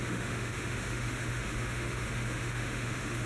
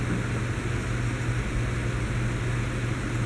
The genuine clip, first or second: second